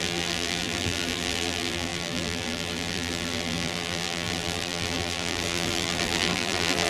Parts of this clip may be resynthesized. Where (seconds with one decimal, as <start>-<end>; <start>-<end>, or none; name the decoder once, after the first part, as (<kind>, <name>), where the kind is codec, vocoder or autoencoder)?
0.0-6.9 (vocoder, BigVGAN v2)

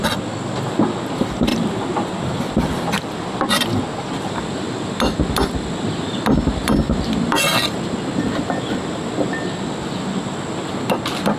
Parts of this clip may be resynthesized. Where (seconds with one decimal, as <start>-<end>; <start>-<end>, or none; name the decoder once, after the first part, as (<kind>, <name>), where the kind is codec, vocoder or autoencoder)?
1.5-3.4 (vocoder, BigVGAN v2)

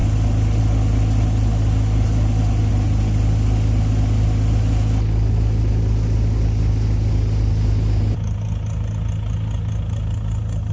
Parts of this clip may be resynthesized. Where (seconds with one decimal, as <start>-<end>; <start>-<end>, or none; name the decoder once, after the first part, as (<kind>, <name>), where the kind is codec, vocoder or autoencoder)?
none

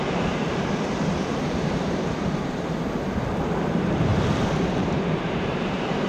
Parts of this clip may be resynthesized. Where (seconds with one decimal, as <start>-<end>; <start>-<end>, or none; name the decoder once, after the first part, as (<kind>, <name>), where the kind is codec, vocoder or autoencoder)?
0.0-4.1 (vocoder, BigVGAN v2); 4.7-6.1

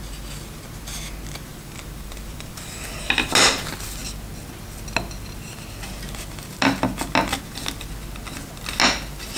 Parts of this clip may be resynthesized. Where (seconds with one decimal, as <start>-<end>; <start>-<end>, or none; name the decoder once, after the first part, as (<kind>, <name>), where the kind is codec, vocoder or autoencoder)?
1.5-3.3 (vocoder, BigVGAN v2)

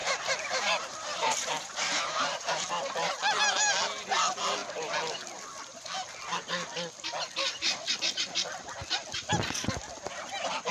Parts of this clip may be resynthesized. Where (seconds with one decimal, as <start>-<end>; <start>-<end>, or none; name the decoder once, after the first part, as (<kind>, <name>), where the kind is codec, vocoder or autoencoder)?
0.0-3.1 (vocoder, BigVGAN v2)

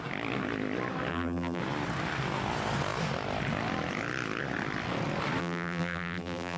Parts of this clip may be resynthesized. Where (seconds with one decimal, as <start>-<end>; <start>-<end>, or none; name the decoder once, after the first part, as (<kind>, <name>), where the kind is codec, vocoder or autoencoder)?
1.1-1.6 (vocoder, BigVGAN v2); 5.4-6.6